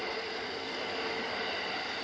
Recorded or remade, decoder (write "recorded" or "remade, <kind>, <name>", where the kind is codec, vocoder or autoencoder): recorded